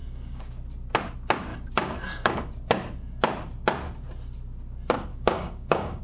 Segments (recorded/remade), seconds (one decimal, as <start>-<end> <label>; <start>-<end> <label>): 0.0-0.6 remade; 0.6-1.5 recorded; 1.5-2.4 remade; 2.4-5.1 recorded; 5.1-6.0 remade